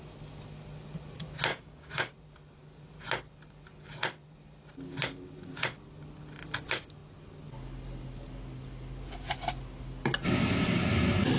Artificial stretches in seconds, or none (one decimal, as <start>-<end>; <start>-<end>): 1.5-2.1